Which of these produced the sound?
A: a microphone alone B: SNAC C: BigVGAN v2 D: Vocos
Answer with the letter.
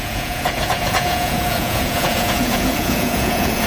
D